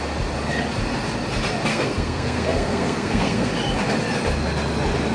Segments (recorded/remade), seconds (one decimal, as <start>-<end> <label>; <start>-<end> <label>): 0.0-1.7 recorded; 1.7-3.5 remade; 3.5-5.1 recorded